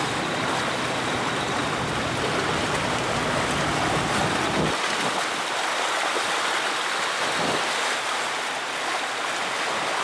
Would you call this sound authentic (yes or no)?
yes